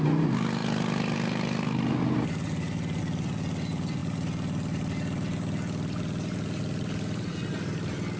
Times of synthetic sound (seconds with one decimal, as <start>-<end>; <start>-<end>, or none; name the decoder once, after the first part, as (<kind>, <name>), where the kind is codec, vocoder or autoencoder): none